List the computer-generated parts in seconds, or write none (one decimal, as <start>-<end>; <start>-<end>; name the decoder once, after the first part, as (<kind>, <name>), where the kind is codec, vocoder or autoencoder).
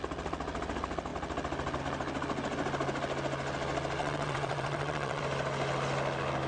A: 4.0-5.2 (vocoder, WaveNeXt)